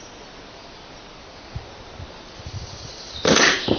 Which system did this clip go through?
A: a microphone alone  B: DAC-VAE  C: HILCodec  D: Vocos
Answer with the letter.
A